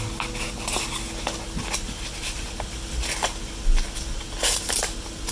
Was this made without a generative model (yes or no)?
yes